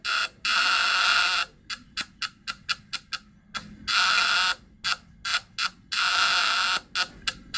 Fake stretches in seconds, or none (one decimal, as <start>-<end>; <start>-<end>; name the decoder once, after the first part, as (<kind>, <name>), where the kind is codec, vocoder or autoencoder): none